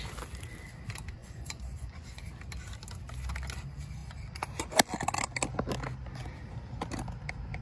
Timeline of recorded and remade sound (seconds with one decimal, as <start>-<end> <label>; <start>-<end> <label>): 0.0-1.2 recorded; 1.2-2.3 remade; 2.3-7.6 recorded